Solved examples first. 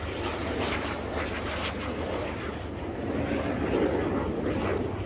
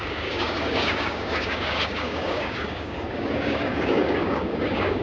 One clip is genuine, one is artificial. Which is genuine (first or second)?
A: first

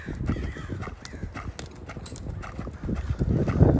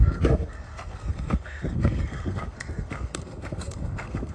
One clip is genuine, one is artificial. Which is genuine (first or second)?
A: first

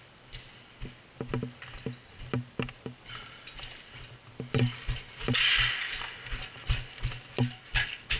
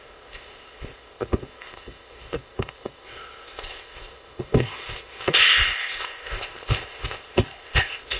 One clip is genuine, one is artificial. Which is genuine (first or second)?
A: first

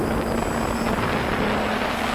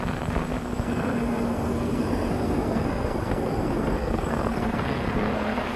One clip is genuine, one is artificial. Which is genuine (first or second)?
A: first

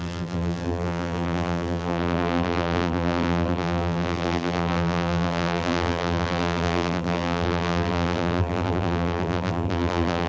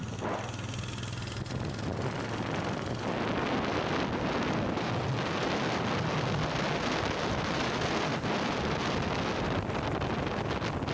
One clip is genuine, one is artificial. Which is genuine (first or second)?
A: second